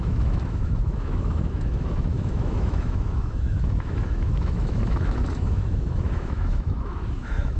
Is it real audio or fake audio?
fake